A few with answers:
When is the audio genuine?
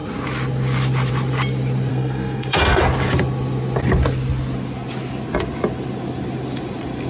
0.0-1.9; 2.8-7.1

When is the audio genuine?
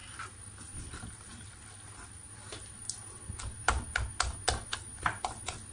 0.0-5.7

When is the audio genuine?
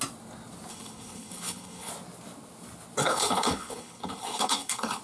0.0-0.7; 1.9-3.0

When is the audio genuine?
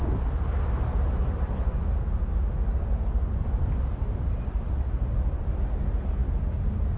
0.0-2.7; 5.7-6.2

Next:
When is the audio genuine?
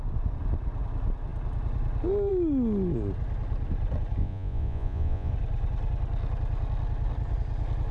0.0-4.2; 5.3-7.9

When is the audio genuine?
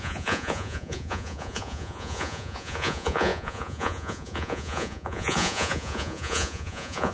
none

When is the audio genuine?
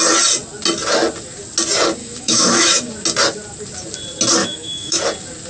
0.0-2.0; 2.9-4.4; 5.0-5.5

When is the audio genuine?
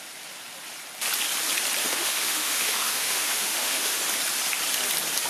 0.0-1.8; 4.0-5.3